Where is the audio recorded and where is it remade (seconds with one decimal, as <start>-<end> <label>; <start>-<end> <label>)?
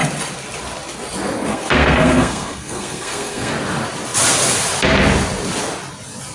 0.0-1.5 recorded; 1.5-3.5 remade; 3.5-6.3 recorded